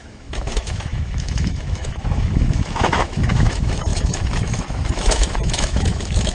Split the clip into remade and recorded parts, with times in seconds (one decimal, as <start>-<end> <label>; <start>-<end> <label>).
0.0-6.3 remade